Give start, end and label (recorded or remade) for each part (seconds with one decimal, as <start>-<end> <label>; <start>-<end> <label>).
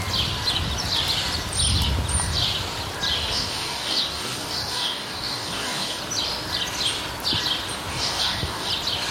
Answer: 0.0-3.2 recorded; 3.2-6.0 remade; 6.0-7.9 recorded; 7.9-8.7 remade; 8.7-9.1 recorded